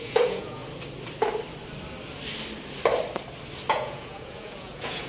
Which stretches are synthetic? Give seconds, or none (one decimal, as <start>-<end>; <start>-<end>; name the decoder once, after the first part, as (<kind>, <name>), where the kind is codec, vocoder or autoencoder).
0.0-0.6 (vocoder, Vocos); 3.7-5.1